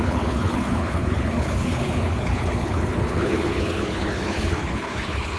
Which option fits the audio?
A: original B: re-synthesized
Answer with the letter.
B